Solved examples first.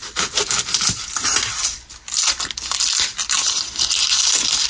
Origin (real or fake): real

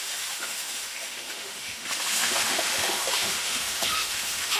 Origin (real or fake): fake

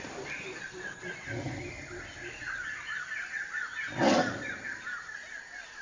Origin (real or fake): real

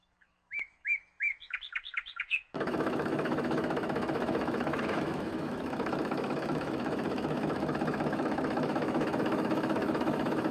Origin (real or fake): fake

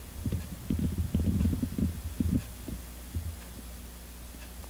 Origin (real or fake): real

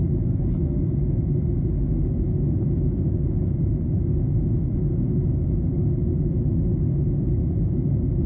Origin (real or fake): fake